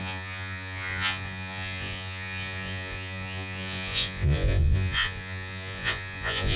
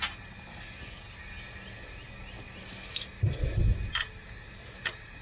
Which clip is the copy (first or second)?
first